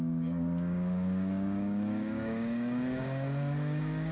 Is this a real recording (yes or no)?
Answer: no